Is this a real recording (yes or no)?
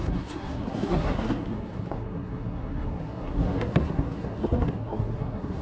no